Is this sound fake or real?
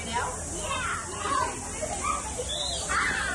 real